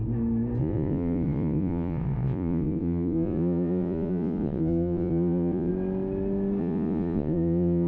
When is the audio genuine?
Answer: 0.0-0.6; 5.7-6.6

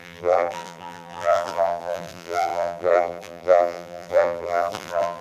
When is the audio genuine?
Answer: none

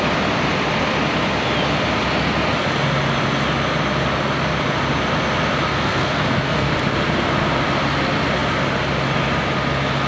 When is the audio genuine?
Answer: 0.0-5.7; 6.7-10.1

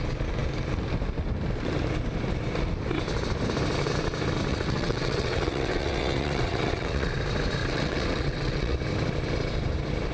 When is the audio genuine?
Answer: 0.0-4.5; 7.1-7.6; 8.8-10.1

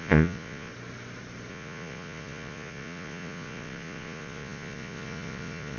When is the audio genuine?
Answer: 0.7-1.5

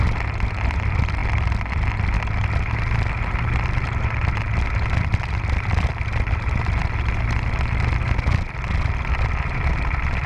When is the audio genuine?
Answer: 0.0-10.3